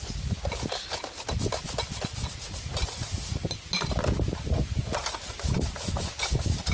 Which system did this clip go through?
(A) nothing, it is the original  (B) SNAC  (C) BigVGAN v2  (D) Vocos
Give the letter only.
A